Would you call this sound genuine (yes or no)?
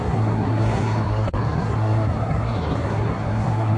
no